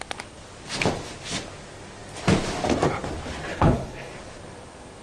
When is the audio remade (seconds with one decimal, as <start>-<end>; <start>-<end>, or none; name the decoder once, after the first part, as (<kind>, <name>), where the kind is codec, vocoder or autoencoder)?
3.5-4.1 (codec, HILCodec)